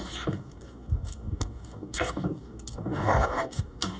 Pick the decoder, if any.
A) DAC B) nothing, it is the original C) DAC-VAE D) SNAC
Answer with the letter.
A